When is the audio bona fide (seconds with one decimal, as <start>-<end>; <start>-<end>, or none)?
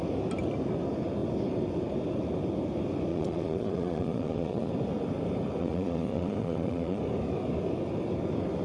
0.0-3.1; 4.7-5.6; 7.0-8.6